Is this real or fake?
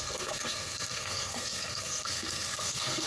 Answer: fake